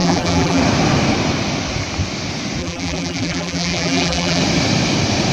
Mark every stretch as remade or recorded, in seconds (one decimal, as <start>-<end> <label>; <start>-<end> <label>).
0.0-0.6 remade; 0.6-2.6 recorded; 2.6-4.4 remade; 4.4-5.3 recorded